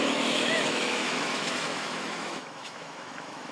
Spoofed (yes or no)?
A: yes